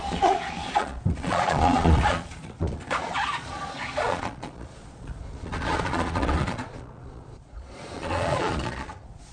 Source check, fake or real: fake